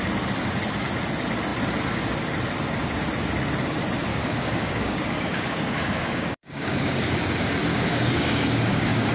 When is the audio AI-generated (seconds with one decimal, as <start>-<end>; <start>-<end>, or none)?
4.1-7.1; 7.7-9.1